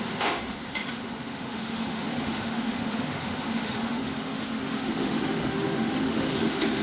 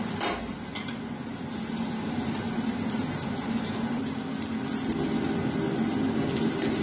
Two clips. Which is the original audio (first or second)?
second